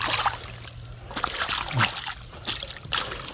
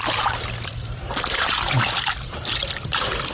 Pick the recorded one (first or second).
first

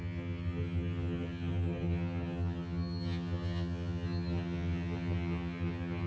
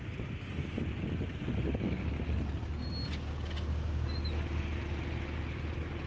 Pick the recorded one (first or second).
second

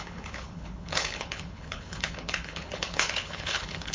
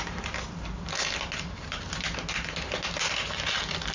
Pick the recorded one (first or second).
second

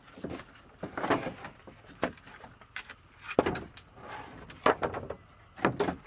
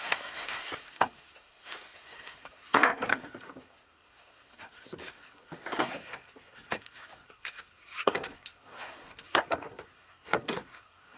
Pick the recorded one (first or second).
first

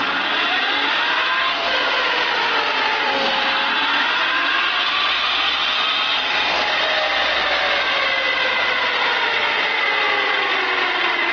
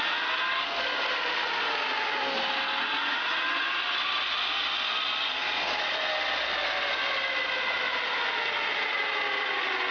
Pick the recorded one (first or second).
second